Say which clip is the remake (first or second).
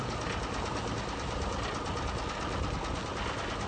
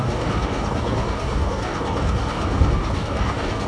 second